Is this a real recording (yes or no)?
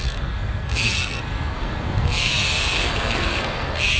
no